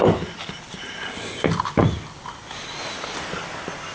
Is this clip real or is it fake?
real